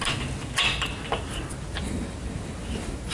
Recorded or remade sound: recorded